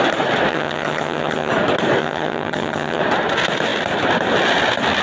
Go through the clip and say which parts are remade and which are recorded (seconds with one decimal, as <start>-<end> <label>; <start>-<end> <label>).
0.0-0.5 recorded; 0.5-1.5 remade; 1.5-2.0 recorded; 2.0-3.0 remade; 3.0-5.0 recorded